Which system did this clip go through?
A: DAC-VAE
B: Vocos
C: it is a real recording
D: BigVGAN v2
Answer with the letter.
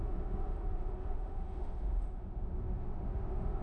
A